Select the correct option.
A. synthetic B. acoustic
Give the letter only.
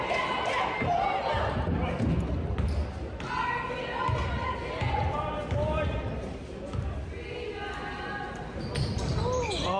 B